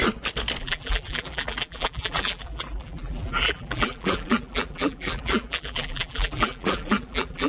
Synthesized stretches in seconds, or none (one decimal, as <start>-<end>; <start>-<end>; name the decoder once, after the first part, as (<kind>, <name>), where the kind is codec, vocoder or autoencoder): 0.6-7.5 (vocoder, BigVGAN v2)